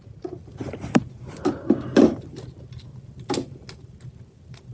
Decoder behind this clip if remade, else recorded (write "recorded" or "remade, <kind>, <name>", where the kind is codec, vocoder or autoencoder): recorded